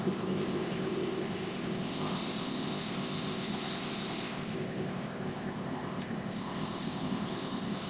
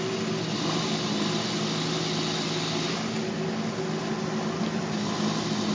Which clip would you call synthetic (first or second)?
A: first